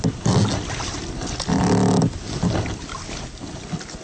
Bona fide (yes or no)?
yes